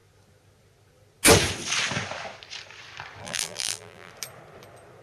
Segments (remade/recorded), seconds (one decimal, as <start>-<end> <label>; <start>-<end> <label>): 0.0-3.2 recorded; 3.2-4.1 remade; 4.1-5.0 recorded